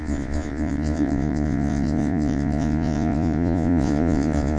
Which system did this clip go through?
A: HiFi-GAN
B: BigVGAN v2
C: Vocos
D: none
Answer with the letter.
C